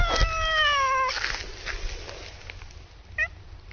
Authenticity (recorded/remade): recorded